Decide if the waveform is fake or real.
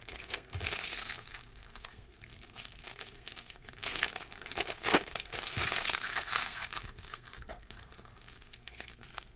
fake